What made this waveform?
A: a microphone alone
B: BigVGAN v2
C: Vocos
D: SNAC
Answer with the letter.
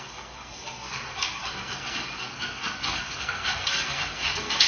D